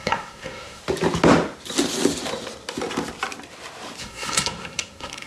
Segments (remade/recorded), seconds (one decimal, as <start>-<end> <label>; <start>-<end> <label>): 0.0-0.8 remade; 0.8-4.0 recorded; 4.0-5.3 remade